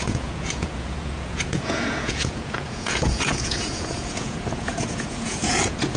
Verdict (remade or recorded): remade